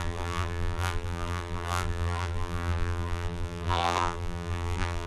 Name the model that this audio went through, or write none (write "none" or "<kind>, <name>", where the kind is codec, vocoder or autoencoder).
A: vocoder, BigVGAN v2